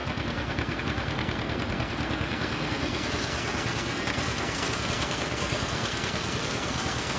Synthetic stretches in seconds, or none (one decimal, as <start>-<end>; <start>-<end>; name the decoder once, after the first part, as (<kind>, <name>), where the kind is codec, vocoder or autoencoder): 0.0-7.2 (codec, SNAC)